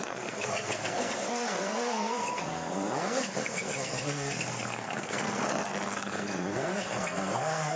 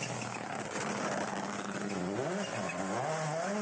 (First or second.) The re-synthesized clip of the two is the first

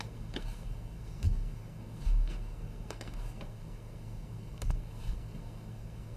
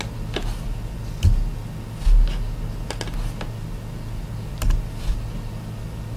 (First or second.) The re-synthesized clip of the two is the first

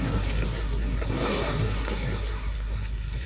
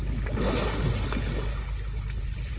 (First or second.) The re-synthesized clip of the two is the first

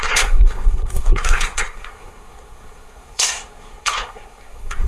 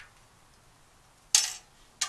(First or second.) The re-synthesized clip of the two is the first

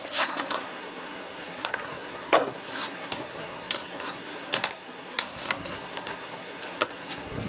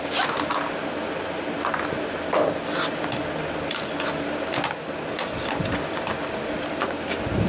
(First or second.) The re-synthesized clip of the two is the first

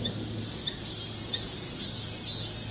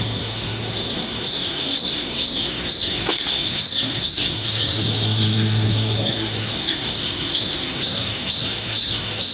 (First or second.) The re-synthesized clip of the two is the second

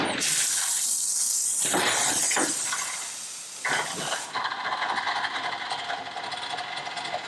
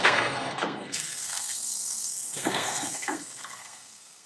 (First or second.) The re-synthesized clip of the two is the second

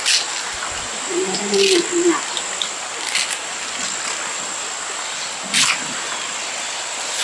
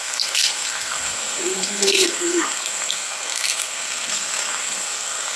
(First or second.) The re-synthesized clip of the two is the second